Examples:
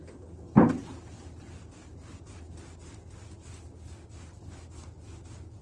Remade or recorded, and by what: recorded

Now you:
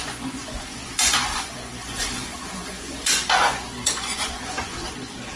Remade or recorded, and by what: remade, vocoder, Vocos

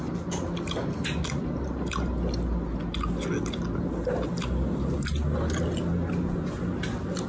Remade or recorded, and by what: recorded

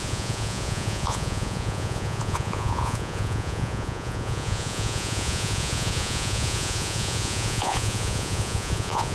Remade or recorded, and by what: remade, vocoder, Vocos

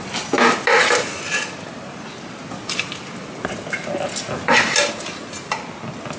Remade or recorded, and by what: recorded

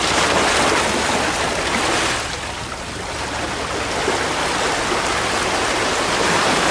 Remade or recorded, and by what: recorded